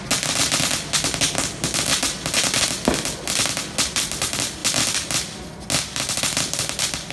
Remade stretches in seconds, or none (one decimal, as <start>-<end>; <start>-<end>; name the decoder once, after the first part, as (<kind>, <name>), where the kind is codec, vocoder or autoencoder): none